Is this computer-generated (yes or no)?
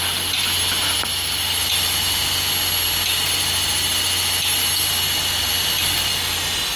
no